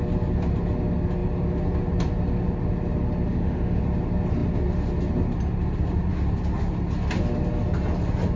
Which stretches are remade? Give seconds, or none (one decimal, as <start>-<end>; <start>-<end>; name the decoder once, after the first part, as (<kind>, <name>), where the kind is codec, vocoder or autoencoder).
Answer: 3.3-3.8 (autoencoder, DAC-VAE)